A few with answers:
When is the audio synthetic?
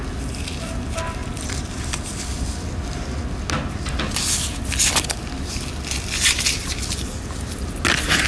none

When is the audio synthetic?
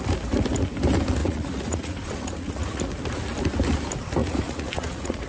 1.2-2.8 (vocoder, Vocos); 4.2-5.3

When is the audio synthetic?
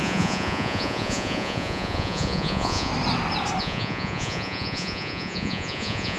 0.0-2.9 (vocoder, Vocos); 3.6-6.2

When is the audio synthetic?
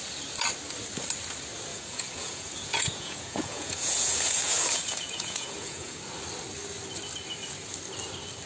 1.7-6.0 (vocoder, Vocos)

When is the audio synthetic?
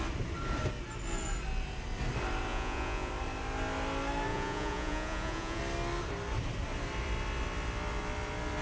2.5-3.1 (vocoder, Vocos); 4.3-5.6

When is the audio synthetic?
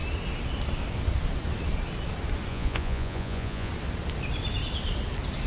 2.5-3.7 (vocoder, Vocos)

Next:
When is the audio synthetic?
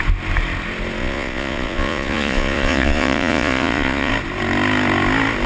1.0-4.1 (vocoder, Vocos)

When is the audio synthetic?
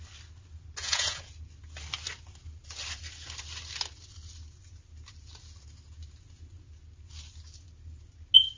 0.8-1.3 (vocoder, Vocos)